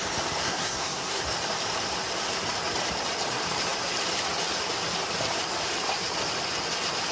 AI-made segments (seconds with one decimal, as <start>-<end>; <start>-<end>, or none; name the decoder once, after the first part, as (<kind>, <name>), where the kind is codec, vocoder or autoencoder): 0.4-1.2 (codec, SNAC)